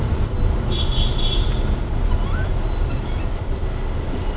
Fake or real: real